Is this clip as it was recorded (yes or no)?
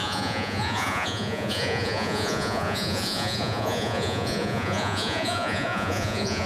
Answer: no